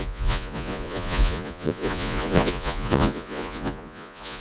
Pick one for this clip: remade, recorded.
remade